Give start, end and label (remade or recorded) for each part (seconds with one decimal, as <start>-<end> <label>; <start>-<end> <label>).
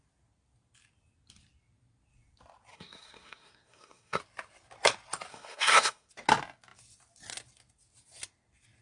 0.0-2.7 recorded; 2.7-4.2 remade; 4.2-5.3 recorded; 5.3-6.1 remade; 6.1-8.8 recorded